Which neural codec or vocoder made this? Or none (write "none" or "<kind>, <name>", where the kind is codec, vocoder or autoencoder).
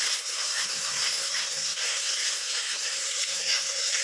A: codec, SNAC